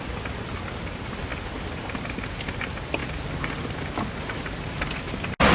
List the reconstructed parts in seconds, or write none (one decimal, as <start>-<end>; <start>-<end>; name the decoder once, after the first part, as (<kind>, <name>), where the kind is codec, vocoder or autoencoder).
none